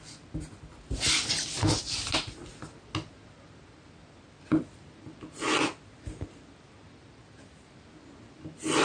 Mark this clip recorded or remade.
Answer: recorded